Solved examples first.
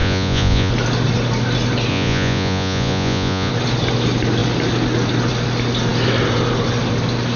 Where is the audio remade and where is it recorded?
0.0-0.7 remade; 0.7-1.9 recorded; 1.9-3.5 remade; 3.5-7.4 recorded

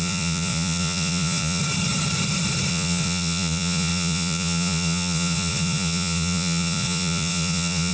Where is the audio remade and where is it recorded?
0.0-1.6 remade; 1.6-2.7 recorded; 2.7-7.9 remade